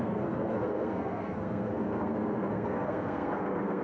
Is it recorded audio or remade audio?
remade